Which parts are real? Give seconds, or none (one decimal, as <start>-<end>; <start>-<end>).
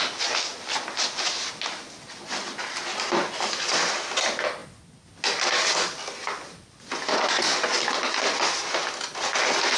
0.0-7.1; 7.7-9.8